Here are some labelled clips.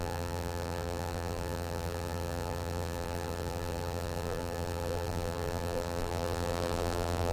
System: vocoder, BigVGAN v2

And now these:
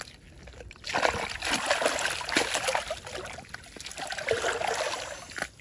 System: none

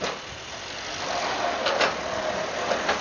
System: none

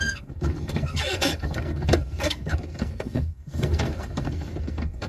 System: codec, SNAC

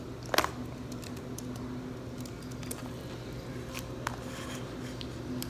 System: none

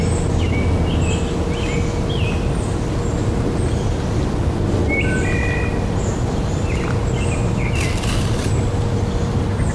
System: none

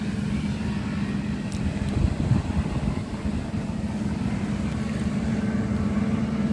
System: none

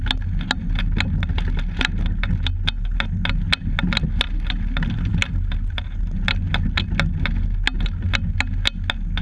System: none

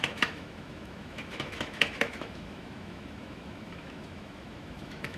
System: autoencoder, DAC-VAE